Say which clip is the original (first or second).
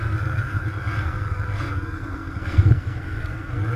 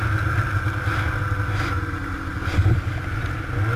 second